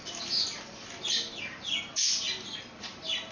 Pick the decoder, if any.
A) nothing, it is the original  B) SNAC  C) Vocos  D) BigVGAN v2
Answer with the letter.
A